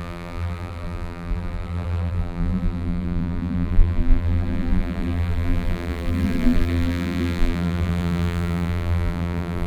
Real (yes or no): no